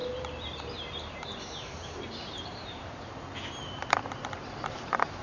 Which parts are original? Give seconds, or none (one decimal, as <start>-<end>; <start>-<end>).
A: 3.1-3.8

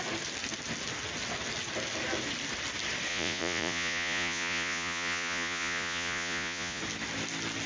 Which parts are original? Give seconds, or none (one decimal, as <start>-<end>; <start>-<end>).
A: 0.0-3.1; 6.8-7.7

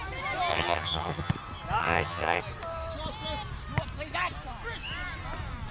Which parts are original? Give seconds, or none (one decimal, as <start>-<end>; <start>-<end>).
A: 0.0-0.5; 1.3-1.8; 2.4-5.7

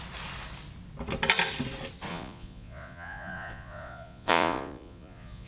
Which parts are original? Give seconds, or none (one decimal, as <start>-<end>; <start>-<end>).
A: 0.0-2.1

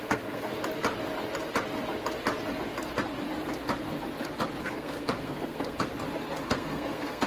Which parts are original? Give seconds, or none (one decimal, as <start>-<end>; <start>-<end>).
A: 0.5-4.6; 5.9-6.4

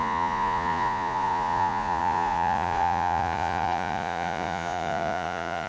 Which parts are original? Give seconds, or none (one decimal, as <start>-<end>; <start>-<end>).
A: none

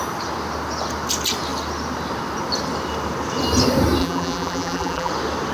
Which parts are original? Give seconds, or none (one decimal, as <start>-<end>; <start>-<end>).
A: 0.0-4.0; 5.1-5.5

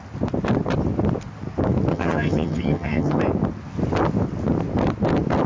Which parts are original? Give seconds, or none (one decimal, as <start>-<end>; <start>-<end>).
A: 0.0-1.9; 3.2-5.5